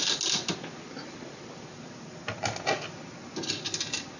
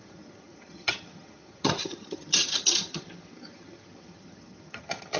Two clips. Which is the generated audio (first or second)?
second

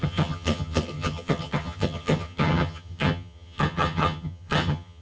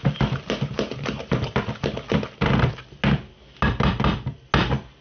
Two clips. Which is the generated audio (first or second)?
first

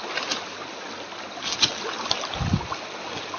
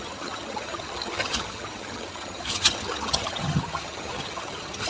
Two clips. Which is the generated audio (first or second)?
second